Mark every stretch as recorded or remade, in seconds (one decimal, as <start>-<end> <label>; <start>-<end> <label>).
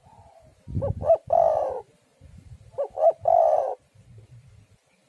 0.0-5.1 recorded